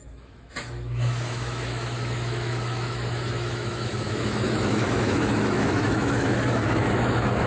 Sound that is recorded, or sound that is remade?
remade